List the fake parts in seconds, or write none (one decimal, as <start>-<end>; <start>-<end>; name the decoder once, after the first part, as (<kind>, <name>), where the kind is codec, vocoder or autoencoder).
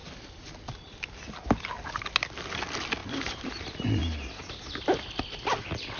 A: 0.0-0.9 (vocoder, BigVGAN v2); 3.0-3.6